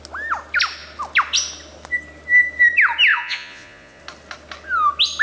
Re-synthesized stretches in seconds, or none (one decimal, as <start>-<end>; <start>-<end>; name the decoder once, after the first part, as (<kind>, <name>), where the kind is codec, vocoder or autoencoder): 3.1-4.0 (vocoder, Vocos)